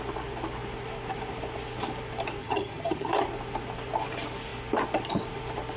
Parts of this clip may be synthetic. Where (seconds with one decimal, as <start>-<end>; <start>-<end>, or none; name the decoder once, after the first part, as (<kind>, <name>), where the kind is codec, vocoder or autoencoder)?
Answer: 2.4-3.1 (vocoder, HiFi-GAN)